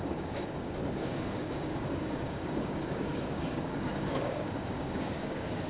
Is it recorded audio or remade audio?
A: remade